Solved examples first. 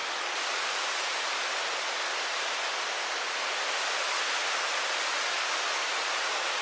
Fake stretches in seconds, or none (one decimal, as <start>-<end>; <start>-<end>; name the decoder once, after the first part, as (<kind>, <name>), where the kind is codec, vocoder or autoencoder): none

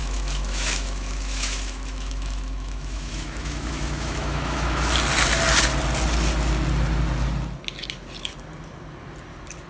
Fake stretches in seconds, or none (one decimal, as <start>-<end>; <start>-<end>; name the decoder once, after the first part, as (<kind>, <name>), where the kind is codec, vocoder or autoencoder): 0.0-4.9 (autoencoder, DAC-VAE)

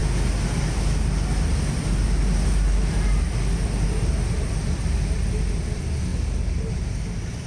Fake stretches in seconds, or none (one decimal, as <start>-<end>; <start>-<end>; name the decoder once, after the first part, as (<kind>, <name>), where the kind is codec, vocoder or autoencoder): none

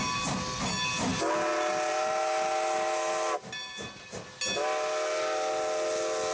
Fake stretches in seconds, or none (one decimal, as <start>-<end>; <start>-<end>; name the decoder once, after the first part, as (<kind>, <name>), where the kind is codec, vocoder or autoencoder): none

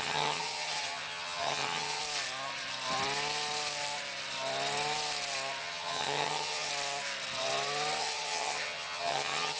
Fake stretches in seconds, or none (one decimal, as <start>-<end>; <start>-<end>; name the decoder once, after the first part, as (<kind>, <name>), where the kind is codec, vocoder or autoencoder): 0.0-2.0 (vocoder, HiFi-GAN); 5.6-6.7; 8.0-9.6

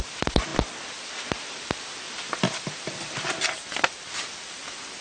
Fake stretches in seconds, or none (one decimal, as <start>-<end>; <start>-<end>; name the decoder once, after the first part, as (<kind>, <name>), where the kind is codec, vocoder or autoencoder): none